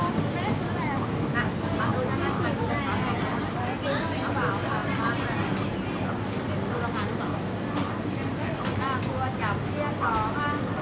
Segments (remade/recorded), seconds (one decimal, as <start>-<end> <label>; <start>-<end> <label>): 0.0-10.8 recorded